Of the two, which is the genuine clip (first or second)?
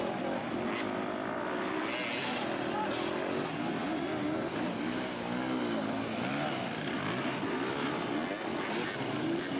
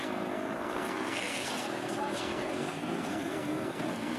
first